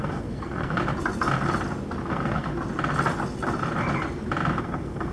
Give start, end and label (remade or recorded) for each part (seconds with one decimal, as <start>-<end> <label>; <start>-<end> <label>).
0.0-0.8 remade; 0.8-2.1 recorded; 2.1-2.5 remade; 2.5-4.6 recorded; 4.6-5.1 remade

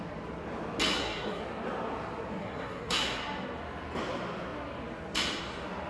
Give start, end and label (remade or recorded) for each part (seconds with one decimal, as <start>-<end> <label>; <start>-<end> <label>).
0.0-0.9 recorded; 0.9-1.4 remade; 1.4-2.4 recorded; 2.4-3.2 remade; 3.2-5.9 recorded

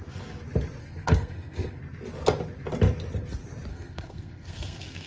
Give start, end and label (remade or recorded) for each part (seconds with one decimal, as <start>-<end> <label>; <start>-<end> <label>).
0.0-0.8 recorded; 0.8-1.8 remade; 1.8-3.7 recorded; 3.7-5.1 remade

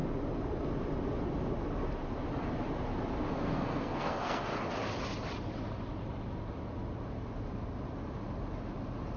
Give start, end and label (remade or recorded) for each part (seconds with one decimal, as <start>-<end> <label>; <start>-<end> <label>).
0.0-3.3 recorded; 3.3-4.5 remade; 4.5-9.2 recorded